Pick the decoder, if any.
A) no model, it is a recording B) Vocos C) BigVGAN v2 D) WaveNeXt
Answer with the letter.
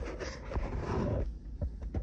A